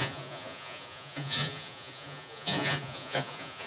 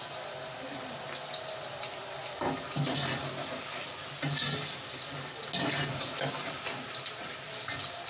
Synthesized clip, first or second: first